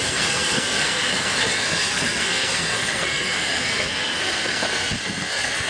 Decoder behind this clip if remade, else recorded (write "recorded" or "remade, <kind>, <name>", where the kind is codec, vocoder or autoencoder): remade, codec, SNAC